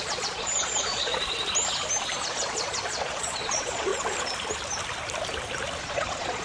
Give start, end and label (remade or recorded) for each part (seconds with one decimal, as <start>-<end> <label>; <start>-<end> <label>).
0.0-1.1 remade; 1.1-2.3 recorded; 2.3-3.9 remade; 3.9-5.8 recorded; 5.8-6.4 remade